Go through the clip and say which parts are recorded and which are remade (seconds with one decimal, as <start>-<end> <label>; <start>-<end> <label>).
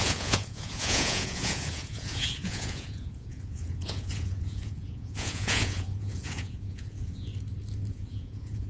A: 0.0-7.3 remade; 7.3-7.9 recorded; 7.9-8.7 remade